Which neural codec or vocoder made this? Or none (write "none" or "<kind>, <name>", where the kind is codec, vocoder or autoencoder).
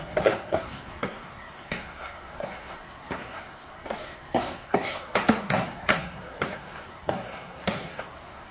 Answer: codec, SNAC